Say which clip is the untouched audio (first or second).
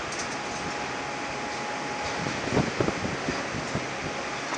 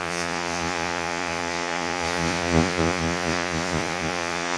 first